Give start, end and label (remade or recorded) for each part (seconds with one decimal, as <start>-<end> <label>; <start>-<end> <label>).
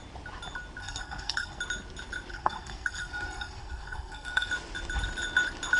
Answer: 0.0-0.8 recorded; 0.8-1.6 remade; 1.6-2.3 recorded; 2.3-4.5 remade; 4.5-5.8 recorded